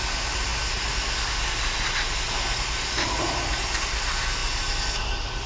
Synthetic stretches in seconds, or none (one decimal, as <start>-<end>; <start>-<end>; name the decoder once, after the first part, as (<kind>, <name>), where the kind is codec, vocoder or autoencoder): none